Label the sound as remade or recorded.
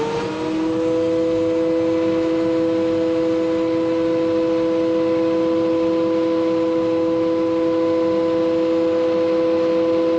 recorded